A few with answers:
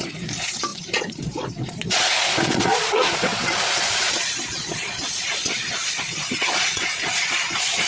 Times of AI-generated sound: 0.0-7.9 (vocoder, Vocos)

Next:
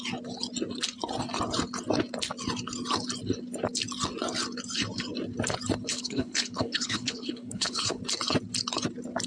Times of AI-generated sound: 5.9-8.0 (codec, HILCodec)

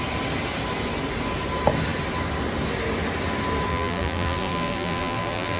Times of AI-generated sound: 3.7-5.6 (vocoder, BigVGAN v2)